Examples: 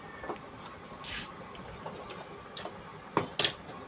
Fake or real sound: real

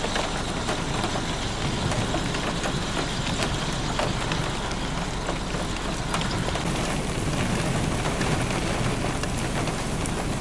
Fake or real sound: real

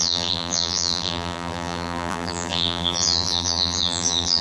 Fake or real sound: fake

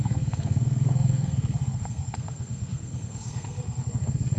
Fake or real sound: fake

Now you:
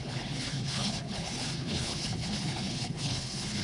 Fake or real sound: fake